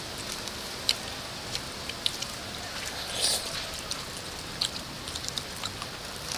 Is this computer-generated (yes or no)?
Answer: yes